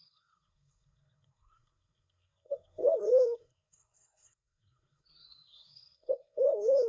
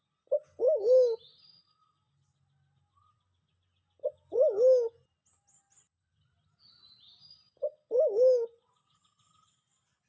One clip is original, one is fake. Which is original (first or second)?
second